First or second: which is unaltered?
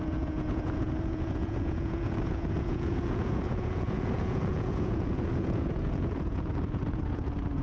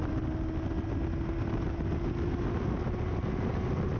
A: second